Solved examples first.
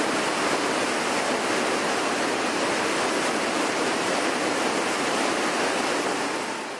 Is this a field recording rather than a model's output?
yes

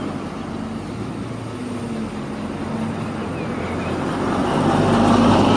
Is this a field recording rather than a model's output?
yes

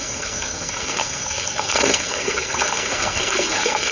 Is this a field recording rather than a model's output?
no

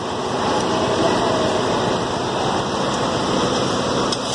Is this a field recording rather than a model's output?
yes